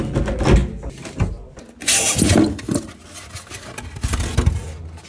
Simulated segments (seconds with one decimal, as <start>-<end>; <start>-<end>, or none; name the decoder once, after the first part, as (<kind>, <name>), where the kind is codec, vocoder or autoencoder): none